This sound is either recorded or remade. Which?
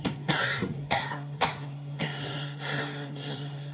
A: remade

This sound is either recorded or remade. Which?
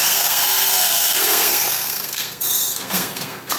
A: remade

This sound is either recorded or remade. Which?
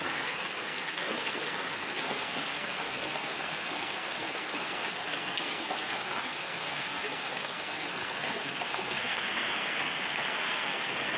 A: remade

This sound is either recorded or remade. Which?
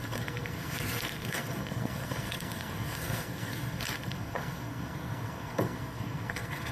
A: remade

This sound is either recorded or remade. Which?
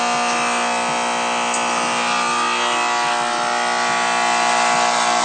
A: recorded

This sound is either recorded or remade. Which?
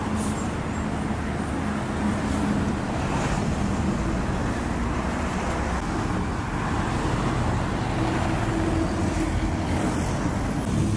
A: recorded